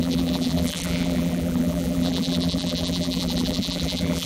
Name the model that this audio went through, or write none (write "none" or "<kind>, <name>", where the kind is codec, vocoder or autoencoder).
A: vocoder, BigVGAN v2